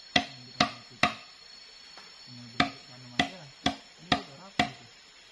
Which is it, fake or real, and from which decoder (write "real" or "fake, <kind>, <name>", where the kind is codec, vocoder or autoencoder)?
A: real